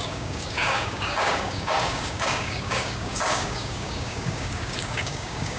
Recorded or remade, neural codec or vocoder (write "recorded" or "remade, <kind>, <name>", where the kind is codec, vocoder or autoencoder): remade, codec, DAC